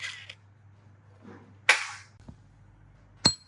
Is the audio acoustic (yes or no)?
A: yes